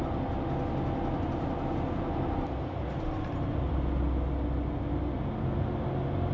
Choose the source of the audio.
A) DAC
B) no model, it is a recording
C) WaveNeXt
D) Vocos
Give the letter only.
B